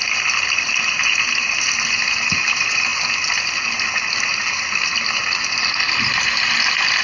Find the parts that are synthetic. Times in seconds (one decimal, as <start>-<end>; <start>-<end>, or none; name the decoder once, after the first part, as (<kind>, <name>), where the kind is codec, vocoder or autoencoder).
none